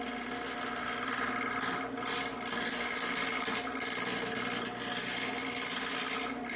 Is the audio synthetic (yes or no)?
no